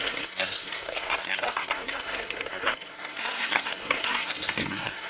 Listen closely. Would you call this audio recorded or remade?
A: remade